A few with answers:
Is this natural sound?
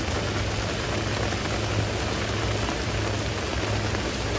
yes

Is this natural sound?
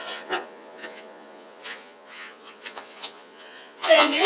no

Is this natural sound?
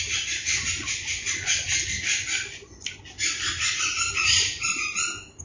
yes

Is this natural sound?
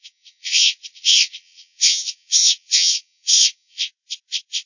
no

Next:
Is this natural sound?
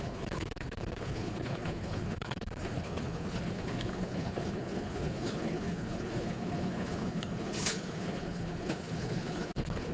no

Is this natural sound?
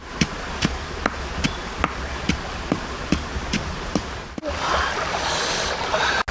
yes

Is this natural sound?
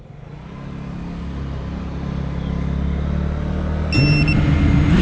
yes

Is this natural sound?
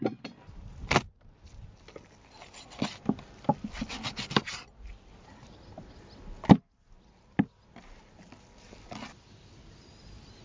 yes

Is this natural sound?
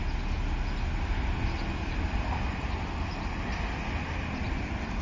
yes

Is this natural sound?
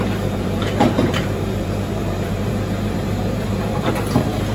no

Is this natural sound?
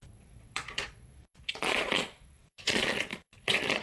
no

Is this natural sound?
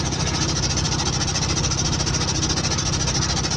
yes